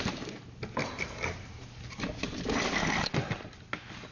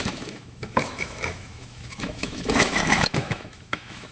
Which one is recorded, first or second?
first